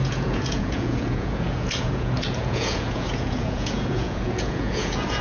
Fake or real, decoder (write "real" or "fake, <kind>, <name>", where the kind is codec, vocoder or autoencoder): fake, vocoder, Vocos